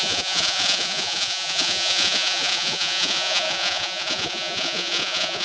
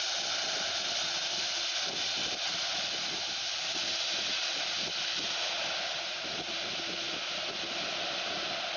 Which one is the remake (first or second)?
first